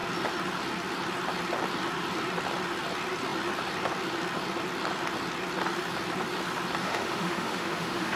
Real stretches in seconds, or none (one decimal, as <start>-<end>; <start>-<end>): 0.0-6.8